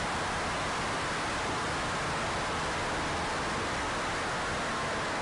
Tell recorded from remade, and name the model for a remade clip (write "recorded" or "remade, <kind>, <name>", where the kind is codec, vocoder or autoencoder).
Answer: recorded